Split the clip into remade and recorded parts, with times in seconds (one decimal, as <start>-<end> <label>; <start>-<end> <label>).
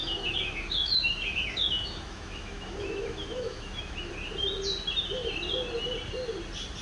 0.0-4.1 remade; 4.1-6.8 recorded